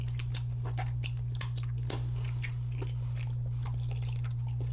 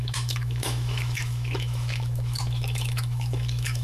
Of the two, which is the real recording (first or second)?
first